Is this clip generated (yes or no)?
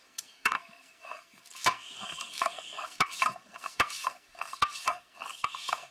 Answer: yes